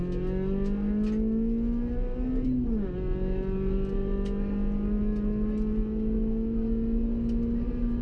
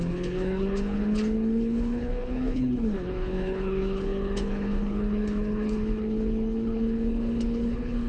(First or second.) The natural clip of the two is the first